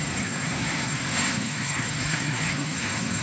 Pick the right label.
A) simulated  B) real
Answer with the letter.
A